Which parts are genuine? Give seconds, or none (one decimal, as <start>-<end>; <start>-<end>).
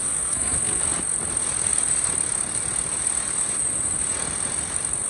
0.8-5.1